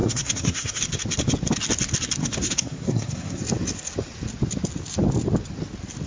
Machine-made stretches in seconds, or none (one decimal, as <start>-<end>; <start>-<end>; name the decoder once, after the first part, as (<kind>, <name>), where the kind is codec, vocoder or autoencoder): 0.0-0.8 (codec, SNAC); 2.2-3.4